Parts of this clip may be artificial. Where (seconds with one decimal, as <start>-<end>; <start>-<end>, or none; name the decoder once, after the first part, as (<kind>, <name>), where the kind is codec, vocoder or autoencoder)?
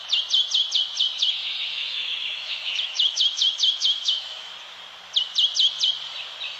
1.7-4.5 (autoencoder, DAC-VAE)